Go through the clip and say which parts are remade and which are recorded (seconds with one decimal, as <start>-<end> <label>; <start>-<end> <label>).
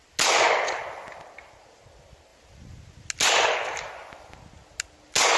0.0-5.4 recorded